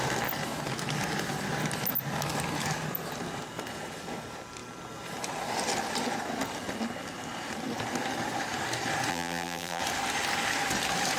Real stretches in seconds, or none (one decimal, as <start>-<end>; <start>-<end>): 0.0-9.1; 9.8-11.2